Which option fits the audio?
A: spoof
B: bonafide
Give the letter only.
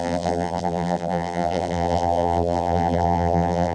A